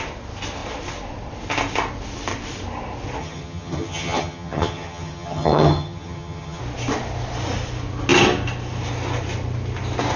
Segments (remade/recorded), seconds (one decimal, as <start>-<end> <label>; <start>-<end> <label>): 0.0-3.2 recorded; 3.2-6.6 remade; 6.6-10.2 recorded